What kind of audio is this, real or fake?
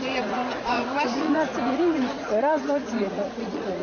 fake